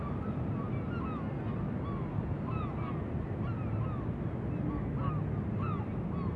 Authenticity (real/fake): real